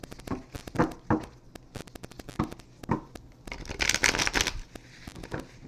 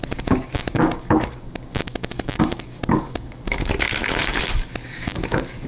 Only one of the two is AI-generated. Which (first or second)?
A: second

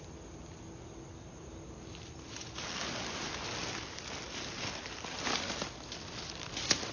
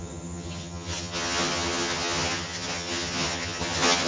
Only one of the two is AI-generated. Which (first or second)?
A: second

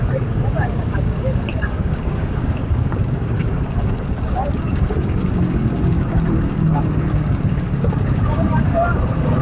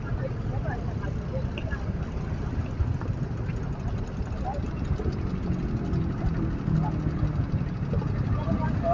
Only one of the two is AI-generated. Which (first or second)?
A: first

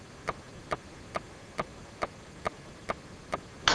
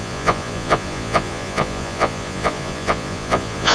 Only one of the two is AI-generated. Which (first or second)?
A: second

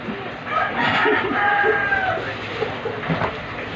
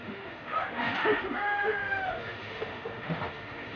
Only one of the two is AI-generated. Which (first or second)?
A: second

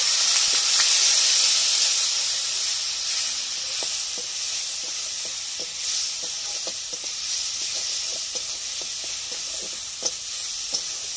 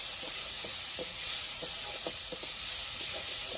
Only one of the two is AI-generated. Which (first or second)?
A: second